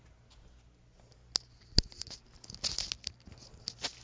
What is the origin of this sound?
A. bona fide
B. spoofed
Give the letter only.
A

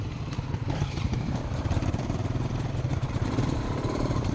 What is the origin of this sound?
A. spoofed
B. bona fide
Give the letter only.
A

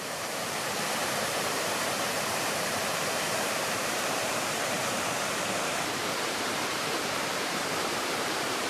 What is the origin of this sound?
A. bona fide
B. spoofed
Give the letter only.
B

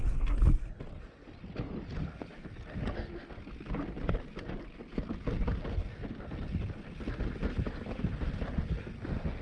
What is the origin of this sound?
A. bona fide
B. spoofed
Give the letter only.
A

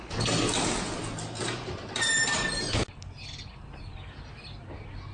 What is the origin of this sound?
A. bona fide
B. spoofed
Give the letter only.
A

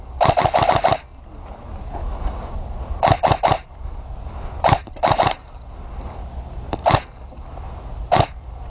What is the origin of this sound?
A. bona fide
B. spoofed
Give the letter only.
A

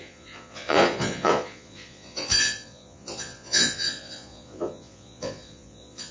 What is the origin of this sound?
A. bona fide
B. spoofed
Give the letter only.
B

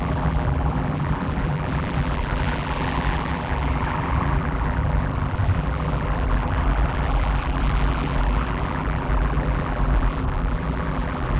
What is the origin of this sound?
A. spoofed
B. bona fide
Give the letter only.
A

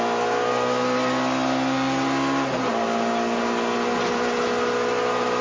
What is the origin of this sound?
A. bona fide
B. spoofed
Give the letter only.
A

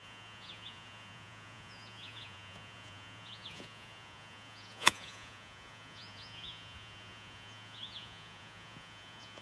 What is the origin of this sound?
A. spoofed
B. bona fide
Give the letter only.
A